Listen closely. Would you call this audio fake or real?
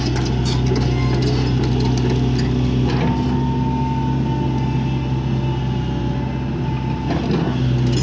real